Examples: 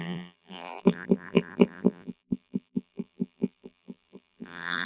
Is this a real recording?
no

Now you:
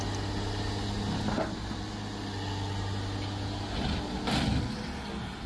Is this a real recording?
yes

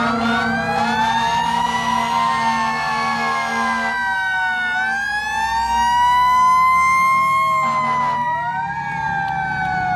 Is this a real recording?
yes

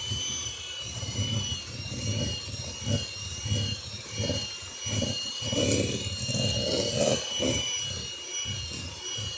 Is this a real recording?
yes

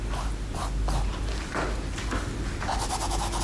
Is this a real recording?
yes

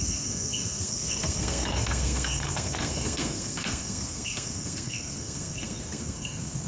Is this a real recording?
no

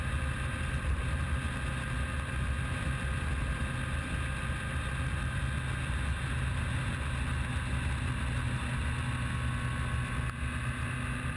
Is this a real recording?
yes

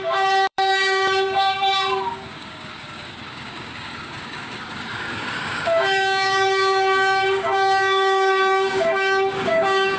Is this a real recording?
no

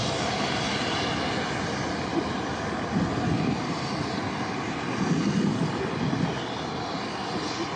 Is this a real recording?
yes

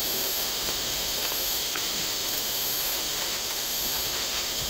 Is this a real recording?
no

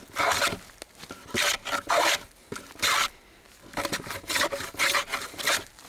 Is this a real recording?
yes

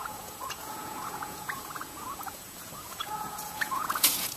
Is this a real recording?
no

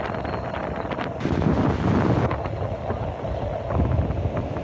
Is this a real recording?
yes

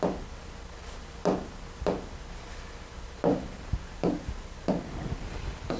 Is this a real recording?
yes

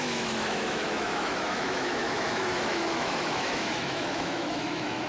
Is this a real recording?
no